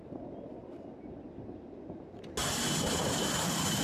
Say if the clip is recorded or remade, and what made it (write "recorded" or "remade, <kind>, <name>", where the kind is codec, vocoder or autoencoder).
recorded